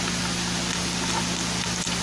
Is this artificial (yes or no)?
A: no